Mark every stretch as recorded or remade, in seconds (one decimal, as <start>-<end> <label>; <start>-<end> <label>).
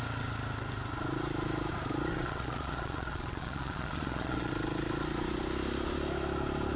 0.0-2.1 recorded; 2.1-4.5 remade; 4.5-6.8 recorded